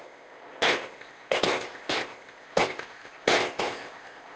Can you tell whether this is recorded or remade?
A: remade